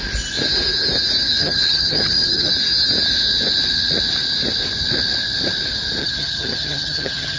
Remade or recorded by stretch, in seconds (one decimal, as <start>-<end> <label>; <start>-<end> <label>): 0.0-1.4 recorded; 1.4-2.5 remade; 2.5-6.0 recorded; 6.0-7.4 remade